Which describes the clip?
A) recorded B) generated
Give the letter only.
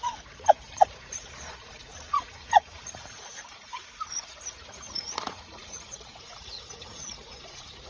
B